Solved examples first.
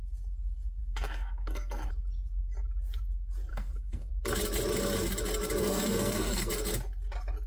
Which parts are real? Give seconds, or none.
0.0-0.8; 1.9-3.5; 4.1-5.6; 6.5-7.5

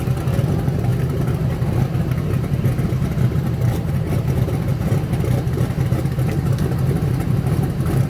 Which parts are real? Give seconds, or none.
0.0-8.1